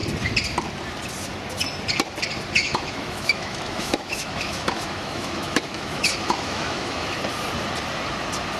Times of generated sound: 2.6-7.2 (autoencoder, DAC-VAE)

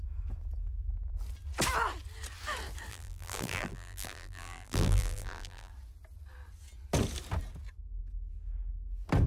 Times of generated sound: 2.9-5.7 (vocoder, BigVGAN v2)

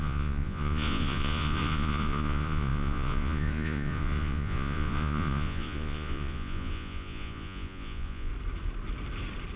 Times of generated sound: 0.0-8.3 (vocoder, Vocos)

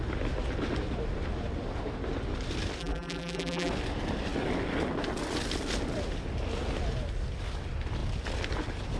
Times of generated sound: 2.8-3.7 (vocoder, BigVGAN v2)

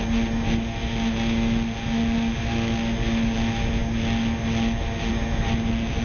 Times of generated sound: none